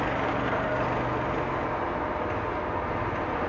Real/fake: real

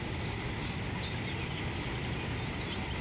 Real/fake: real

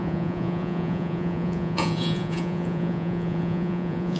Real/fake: fake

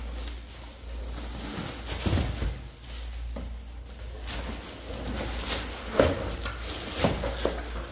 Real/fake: real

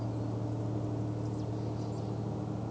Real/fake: real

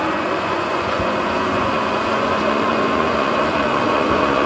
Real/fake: fake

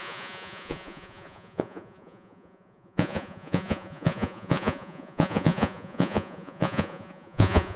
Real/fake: fake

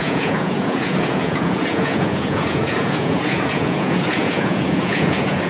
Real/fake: fake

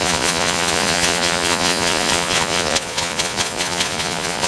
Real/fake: fake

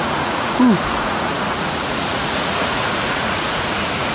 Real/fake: fake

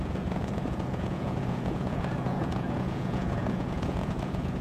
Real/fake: fake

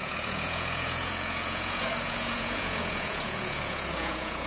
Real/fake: fake